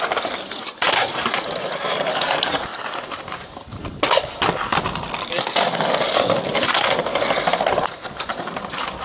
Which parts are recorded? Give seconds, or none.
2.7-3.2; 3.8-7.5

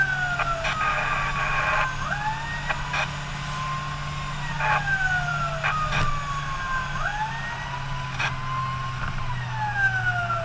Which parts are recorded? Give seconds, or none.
0.0-10.4

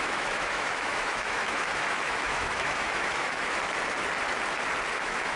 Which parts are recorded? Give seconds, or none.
3.6-4.9

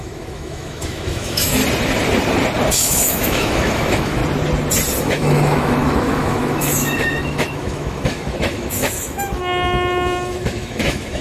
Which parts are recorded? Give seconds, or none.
1.6-2.7; 4.2-5.0

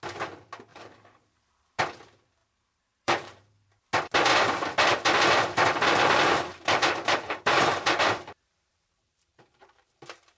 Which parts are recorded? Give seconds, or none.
0.0-0.7; 1.8-2.4; 3.7-6.5; 10.0-10.4

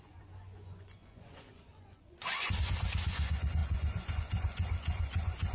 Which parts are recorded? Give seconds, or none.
none

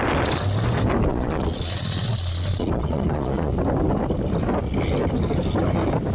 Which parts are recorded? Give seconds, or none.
0.0-1.1; 3.5-6.1